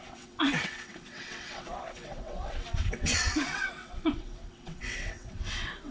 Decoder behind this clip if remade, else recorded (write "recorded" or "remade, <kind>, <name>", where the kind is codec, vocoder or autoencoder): remade, vocoder, WaveNeXt